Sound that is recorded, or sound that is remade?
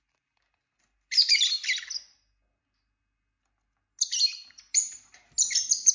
recorded